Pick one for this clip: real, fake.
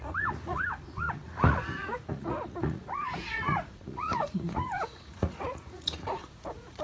fake